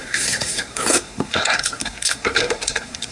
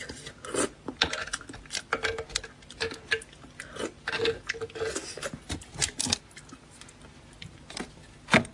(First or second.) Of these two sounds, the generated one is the first